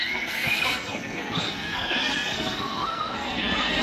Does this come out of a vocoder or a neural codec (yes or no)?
yes